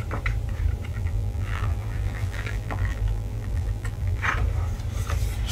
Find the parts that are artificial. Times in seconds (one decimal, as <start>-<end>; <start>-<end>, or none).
0.9-4.2